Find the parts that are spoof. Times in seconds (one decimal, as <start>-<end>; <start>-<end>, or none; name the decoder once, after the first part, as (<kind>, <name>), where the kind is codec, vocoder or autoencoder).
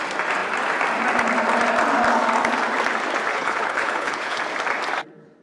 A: 3.3-4.4 (codec, HILCodec)